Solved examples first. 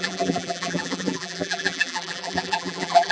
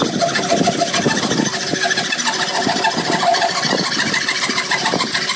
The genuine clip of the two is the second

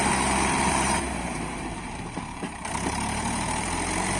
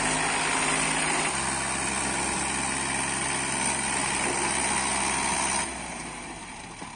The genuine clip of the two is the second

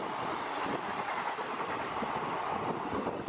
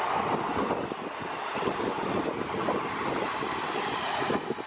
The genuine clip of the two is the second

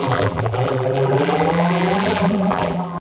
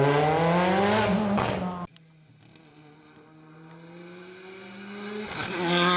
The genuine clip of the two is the second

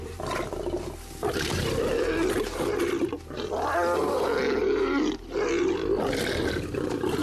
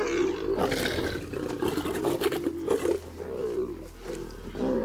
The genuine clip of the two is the second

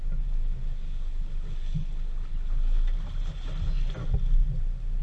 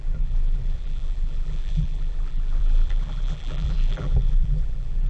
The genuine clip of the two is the first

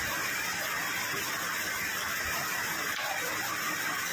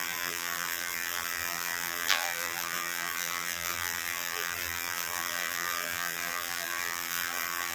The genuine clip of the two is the first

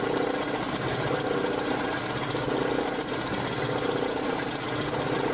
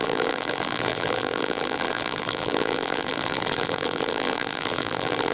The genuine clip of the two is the first